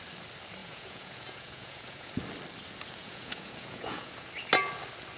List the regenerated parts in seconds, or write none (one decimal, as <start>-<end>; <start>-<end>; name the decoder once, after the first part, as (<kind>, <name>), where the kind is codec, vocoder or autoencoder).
0.6-2.1 (vocoder, Vocos); 3.0-4.3